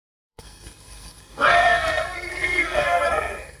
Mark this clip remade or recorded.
remade